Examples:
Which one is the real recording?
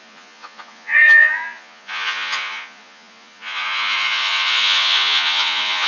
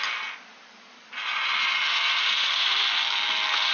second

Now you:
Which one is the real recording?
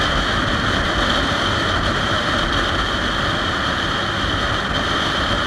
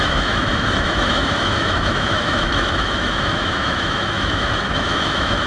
first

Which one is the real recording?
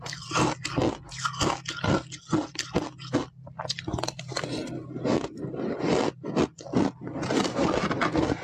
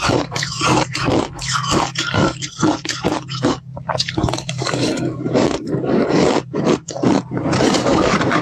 first